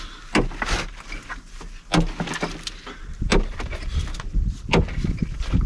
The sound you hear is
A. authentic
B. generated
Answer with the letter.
A